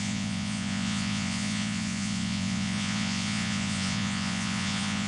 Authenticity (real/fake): fake